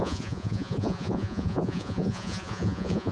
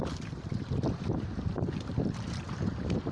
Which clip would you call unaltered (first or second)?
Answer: second